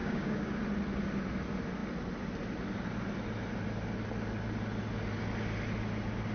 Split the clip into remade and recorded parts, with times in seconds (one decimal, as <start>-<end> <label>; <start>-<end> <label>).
0.0-0.5 remade; 0.5-6.3 recorded